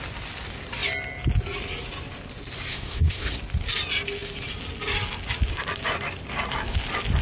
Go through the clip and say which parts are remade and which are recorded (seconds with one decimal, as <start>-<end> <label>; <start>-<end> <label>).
0.0-2.7 recorded; 2.7-3.4 remade; 3.4-7.2 recorded